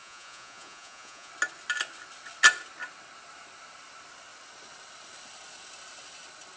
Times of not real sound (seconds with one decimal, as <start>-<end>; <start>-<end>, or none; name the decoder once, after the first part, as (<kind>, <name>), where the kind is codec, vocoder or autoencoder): 0.0-1.3 (vocoder, Vocos)